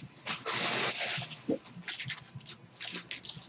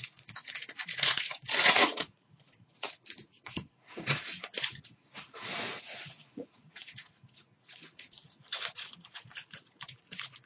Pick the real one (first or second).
first